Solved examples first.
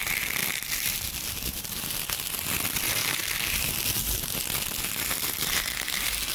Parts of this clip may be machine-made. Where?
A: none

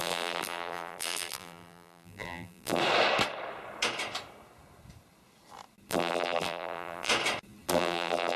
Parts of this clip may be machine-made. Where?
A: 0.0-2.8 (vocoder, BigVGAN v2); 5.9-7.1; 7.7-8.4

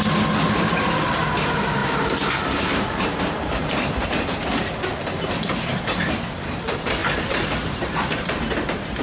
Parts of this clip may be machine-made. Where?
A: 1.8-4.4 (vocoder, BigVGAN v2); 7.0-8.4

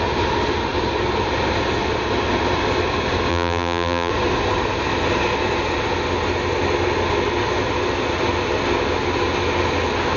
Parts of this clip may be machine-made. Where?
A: 3.3-4.1 (vocoder, BigVGAN v2)

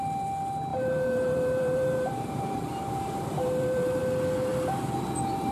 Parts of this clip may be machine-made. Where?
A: 0.7-4.0 (vocoder, BigVGAN v2)

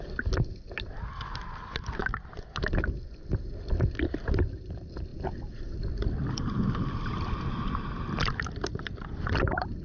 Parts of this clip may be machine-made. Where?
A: 5.1-7.9 (vocoder, BigVGAN v2); 8.7-9.8

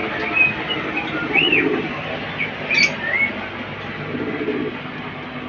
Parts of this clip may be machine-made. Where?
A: 0.8-2.0 (vocoder, BigVGAN v2)